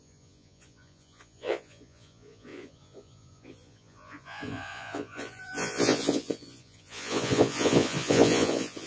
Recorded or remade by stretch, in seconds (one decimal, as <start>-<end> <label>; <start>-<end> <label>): 0.0-8.9 remade